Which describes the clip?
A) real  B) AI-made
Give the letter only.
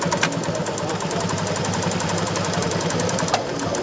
B